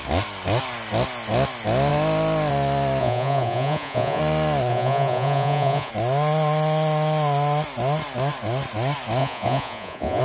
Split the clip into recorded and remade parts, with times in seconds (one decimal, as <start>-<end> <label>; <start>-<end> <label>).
0.0-3.0 recorded; 3.0-4.2 remade; 4.2-4.7 recorded; 4.7-5.9 remade; 5.9-9.2 recorded; 9.2-10.2 remade